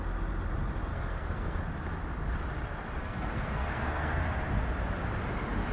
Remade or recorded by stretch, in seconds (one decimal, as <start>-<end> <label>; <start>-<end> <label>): 0.0-0.9 recorded; 0.9-1.6 remade; 1.6-3.0 recorded; 3.0-4.2 remade; 4.2-5.7 recorded

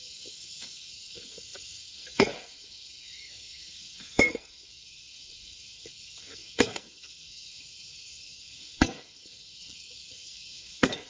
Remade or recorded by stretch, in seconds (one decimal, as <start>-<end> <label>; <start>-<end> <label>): 0.0-11.1 remade

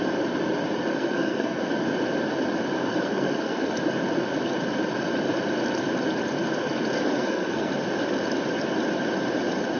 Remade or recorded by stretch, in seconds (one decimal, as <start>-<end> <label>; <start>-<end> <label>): 0.0-0.9 recorded; 0.9-1.6 remade; 1.6-2.8 recorded; 2.8-3.7 remade; 3.7-7.1 recorded; 7.1-7.7 remade; 7.7-9.8 recorded

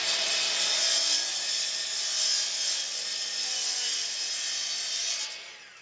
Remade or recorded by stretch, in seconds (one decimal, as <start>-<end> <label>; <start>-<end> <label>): 0.0-5.8 recorded

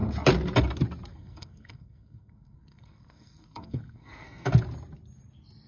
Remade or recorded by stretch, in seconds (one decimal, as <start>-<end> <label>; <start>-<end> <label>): 0.0-1.1 recorded; 1.1-4.5 remade; 4.5-5.7 recorded

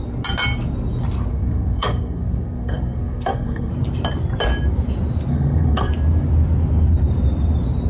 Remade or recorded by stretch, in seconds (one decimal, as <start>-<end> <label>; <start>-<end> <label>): 0.0-1.3 recorded; 1.3-3.7 remade; 3.7-5.3 recorded; 5.3-5.9 remade; 5.9-7.9 recorded

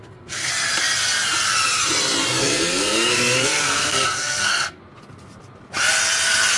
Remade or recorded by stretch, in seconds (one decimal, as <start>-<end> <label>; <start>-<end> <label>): 0.0-0.5 remade; 0.5-2.4 recorded; 2.4-4.8 remade; 4.8-6.6 recorded

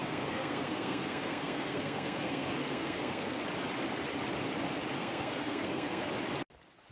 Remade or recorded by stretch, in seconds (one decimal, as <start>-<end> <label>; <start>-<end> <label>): 0.0-3.4 remade; 3.4-5.0 recorded; 5.0-6.1 remade; 6.1-6.9 recorded